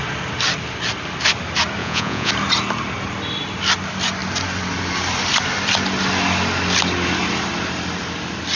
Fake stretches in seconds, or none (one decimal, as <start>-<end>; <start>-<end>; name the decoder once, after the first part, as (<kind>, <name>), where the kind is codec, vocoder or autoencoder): 1.8-2.3 (vocoder, Vocos)